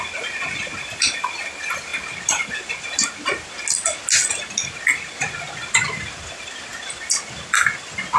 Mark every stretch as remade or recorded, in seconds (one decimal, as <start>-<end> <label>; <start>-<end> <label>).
0.0-8.2 recorded